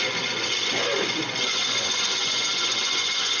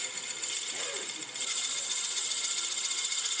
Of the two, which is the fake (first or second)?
first